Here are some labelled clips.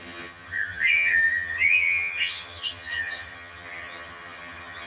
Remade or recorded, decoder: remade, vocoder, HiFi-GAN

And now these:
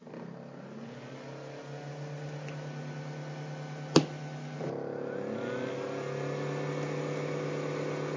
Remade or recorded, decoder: recorded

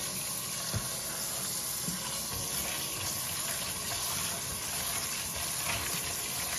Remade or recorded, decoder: recorded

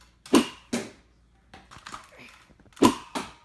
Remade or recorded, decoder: recorded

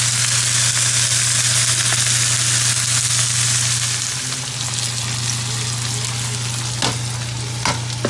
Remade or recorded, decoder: recorded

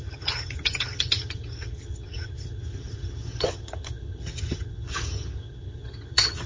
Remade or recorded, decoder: remade, vocoder, HiFi-GAN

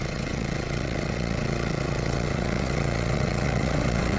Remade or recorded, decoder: remade, vocoder, WaveNeXt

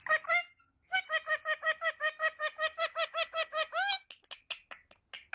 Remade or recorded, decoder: recorded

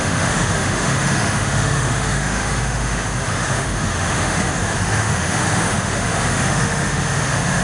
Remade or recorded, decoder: remade, autoencoder, DAC-VAE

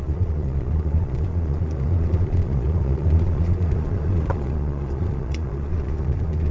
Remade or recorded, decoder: remade, vocoder, Vocos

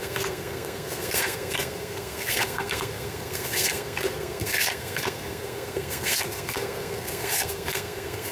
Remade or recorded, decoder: remade, codec, SNAC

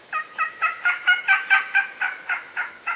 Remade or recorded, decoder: remade, autoencoder, DAC-VAE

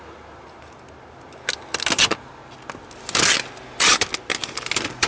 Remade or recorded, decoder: recorded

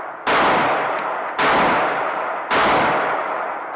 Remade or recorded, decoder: recorded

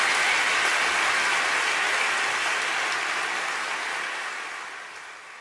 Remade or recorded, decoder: recorded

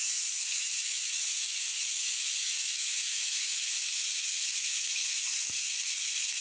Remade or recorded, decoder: remade, autoencoder, DAC-VAE